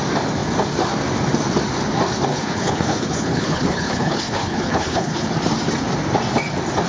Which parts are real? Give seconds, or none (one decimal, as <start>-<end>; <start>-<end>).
0.0-2.3; 5.3-6.9